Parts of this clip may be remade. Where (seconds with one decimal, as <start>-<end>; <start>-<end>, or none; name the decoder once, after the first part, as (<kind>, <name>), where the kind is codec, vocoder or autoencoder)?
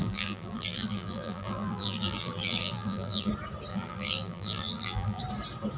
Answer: 0.0-3.3 (vocoder, BigVGAN v2); 3.7-5.2